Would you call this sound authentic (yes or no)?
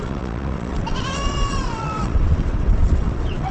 no